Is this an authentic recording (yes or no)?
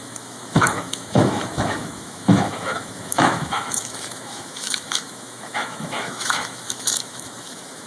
no